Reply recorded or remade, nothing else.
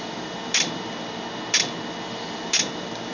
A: recorded